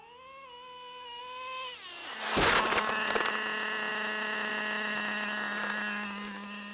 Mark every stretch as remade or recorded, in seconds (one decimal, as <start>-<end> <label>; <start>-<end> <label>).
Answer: 0.0-6.7 recorded